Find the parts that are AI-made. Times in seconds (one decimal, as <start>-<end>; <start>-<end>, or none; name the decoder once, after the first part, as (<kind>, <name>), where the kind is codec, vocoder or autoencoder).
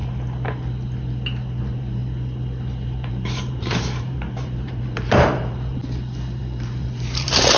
1.6-2.0 (vocoder, BigVGAN v2); 3.1-5.8; 6.4-7.6